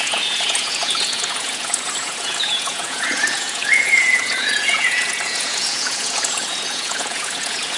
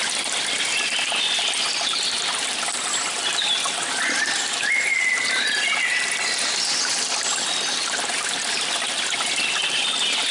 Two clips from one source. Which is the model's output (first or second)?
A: first